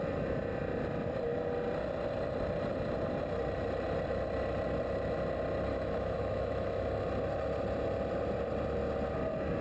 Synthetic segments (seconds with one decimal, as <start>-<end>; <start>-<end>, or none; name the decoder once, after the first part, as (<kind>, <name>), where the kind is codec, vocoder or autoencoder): 5.7-6.8 (autoencoder, DAC-VAE)